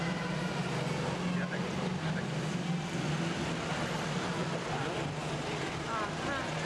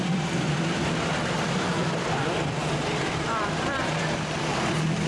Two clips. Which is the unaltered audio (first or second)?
first